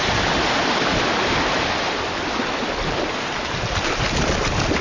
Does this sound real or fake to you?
real